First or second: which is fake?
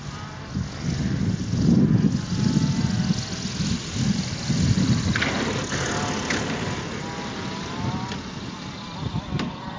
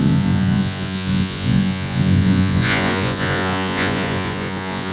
second